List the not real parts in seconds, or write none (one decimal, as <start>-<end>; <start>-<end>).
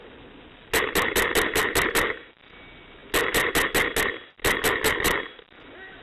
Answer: none